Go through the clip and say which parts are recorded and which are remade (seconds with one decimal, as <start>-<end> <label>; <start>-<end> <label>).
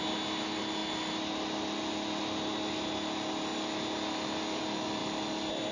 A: 0.0-5.7 recorded